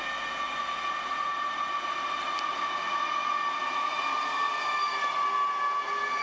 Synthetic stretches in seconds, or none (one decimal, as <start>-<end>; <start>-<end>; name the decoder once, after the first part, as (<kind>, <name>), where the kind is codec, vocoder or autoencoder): none